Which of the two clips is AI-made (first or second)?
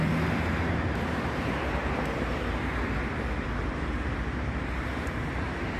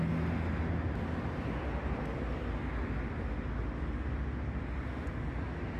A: first